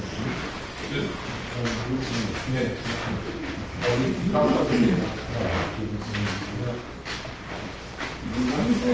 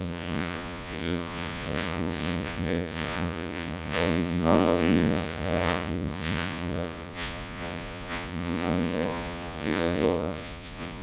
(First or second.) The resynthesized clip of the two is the second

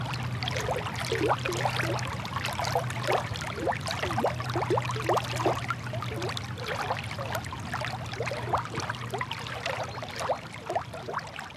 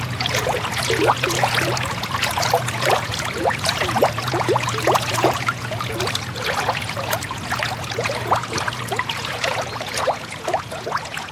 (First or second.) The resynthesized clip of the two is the second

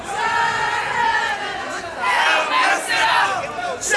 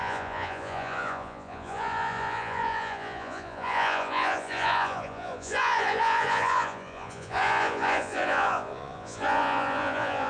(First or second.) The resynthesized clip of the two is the second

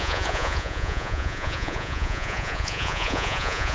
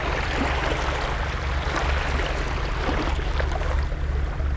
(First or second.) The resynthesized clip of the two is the first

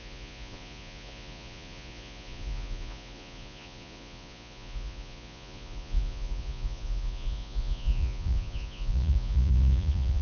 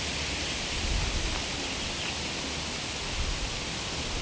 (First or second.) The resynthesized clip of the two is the first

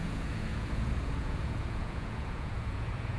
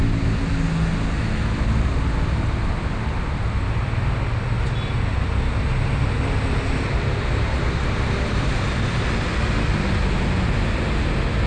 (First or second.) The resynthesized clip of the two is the first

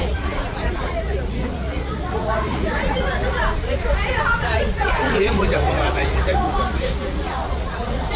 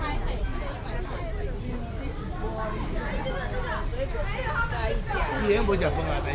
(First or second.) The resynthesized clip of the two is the first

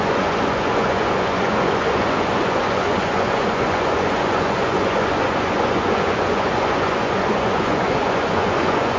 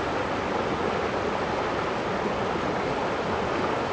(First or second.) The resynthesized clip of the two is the first